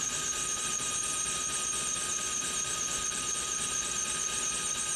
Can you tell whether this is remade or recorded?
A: remade